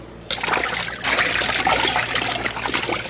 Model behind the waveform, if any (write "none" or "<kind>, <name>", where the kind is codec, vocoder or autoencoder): none